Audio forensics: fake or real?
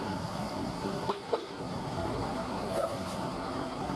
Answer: fake